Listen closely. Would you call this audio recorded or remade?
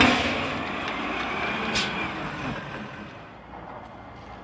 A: recorded